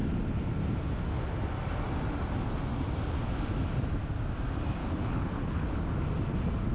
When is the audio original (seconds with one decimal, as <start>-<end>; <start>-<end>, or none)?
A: 0.0-4.8; 5.8-6.7

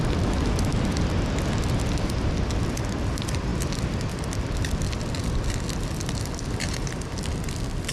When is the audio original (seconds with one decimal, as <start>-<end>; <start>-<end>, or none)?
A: 0.0-7.9

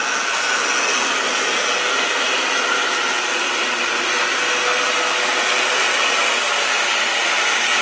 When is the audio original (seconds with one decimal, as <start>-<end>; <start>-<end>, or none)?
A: 0.0-7.8

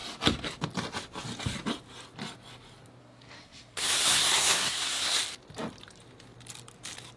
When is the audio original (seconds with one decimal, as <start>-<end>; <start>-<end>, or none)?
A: 0.0-3.0; 5.1-7.2